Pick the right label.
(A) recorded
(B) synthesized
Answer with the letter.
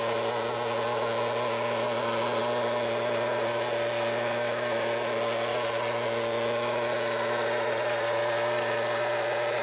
A